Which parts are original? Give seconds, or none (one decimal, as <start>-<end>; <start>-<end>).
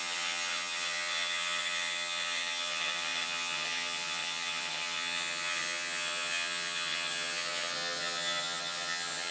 none